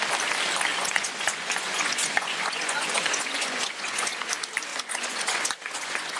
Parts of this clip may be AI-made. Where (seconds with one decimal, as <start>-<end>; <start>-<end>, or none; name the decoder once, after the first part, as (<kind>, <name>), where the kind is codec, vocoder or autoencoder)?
0.7-4.3 (vocoder, Vocos); 4.7-6.2